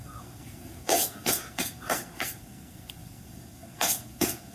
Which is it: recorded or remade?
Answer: remade